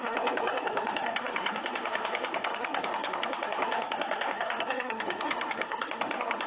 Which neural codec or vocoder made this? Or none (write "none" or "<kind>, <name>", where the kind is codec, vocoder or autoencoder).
codec, SNAC